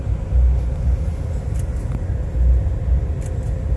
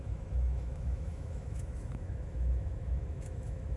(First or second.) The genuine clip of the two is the first